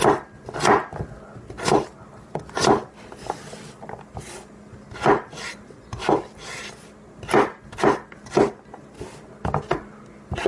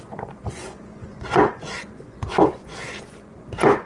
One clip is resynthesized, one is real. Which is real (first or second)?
first